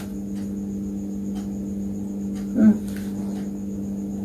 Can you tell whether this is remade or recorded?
recorded